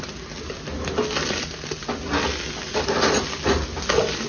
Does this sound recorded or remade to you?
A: recorded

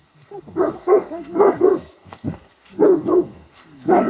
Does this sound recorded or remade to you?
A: remade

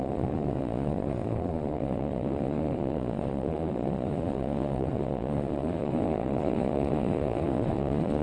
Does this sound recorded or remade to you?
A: remade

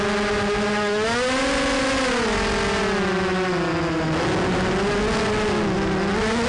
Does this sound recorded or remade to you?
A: recorded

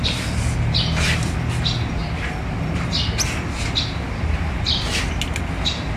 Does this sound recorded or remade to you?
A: recorded